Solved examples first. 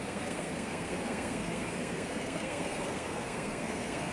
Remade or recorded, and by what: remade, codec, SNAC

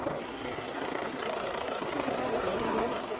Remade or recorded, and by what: remade, codec, SNAC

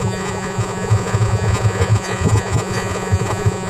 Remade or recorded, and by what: remade, vocoder, Vocos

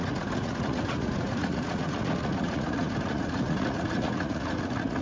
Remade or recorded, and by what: remade, vocoder, Vocos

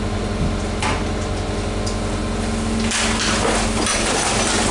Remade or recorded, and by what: recorded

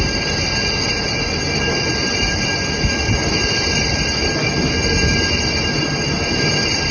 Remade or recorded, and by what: recorded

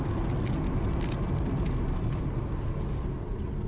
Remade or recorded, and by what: recorded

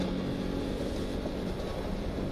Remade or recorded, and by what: recorded